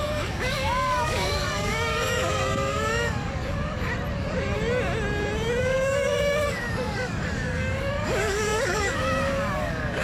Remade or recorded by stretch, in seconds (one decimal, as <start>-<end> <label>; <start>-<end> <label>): 0.0-3.9 remade; 3.9-5.6 recorded; 5.6-10.0 remade